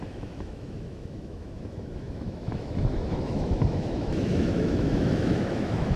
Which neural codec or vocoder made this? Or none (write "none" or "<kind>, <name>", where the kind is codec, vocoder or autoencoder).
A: autoencoder, DAC-VAE